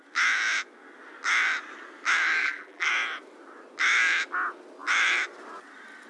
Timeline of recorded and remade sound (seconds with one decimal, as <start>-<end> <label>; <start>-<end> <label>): 0.0-2.4 recorded; 2.4-2.9 remade; 2.9-6.1 recorded